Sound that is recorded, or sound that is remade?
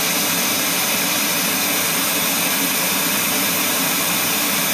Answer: remade